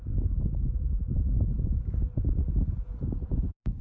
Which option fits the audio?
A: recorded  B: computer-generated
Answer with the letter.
B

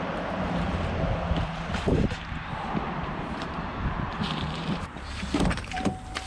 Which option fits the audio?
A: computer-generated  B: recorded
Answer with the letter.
A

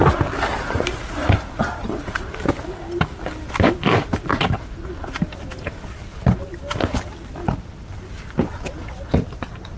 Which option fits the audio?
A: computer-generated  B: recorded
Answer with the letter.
B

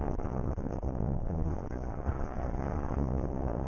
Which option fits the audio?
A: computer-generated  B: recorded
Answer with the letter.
A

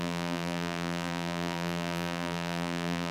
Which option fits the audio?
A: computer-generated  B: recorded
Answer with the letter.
A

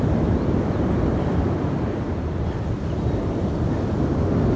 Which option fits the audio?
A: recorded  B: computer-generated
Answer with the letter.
A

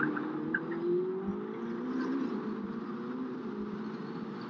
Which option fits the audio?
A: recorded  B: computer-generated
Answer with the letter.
A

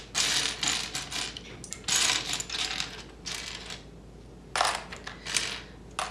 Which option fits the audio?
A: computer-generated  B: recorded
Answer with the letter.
B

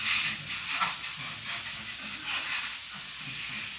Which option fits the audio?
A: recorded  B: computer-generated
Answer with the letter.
A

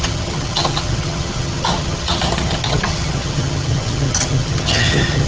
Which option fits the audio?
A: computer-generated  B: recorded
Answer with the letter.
A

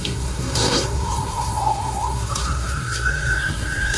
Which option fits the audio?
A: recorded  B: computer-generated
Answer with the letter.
B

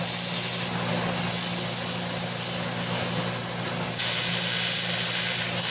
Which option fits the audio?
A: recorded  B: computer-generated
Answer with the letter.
A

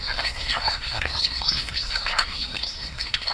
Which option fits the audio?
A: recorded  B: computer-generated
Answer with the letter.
B